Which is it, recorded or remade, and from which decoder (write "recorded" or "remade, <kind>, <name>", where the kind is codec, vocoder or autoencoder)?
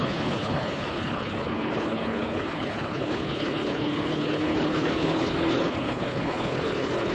remade, codec, HILCodec